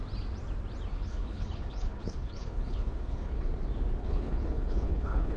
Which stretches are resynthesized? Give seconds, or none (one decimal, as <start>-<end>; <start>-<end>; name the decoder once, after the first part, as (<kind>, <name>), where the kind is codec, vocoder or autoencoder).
0.9-3.5 (codec, HILCodec); 4.0-5.4